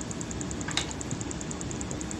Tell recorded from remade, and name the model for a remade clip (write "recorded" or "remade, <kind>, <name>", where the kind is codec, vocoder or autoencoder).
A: recorded